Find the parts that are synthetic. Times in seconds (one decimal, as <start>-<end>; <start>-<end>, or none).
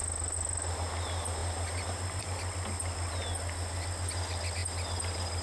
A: none